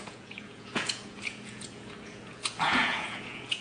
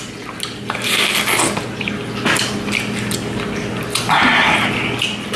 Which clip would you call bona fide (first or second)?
second